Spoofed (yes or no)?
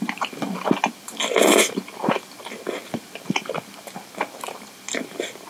no